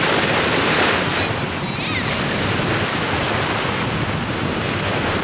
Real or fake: real